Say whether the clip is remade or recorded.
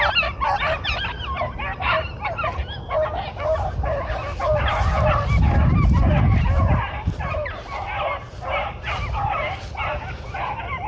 recorded